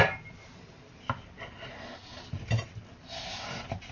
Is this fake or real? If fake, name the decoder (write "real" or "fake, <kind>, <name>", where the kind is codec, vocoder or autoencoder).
real